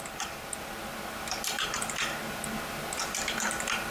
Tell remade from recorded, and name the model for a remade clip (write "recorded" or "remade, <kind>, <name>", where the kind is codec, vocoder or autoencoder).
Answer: recorded